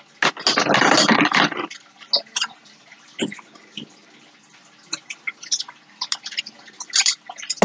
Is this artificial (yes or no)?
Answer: no